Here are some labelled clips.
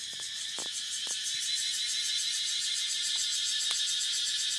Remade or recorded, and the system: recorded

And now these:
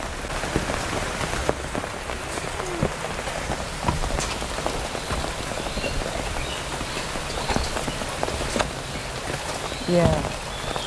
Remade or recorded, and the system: recorded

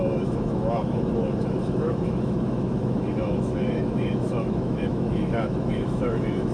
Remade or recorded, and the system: remade, autoencoder, DAC-VAE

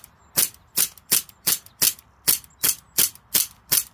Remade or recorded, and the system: recorded